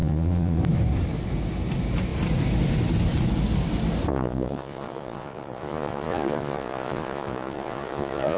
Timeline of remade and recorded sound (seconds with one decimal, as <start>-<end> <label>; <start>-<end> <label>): 0.0-0.6 remade; 0.6-4.1 recorded; 4.1-8.4 remade